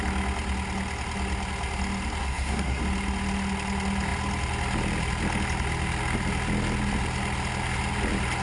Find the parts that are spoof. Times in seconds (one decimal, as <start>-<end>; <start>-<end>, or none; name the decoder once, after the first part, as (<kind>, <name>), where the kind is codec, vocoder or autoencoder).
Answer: 2.2-2.8 (codec, SNAC)